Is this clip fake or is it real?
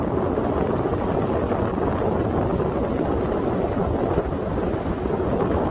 real